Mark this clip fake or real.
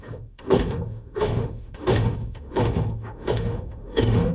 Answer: fake